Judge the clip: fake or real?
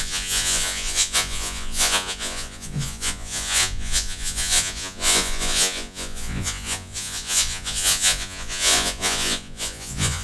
fake